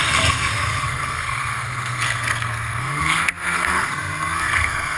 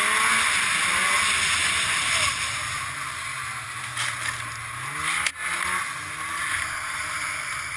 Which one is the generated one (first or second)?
first